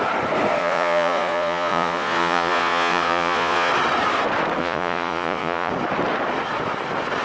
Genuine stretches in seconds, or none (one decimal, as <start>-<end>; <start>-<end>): 0.0-0.6; 3.7-4.6; 5.7-7.2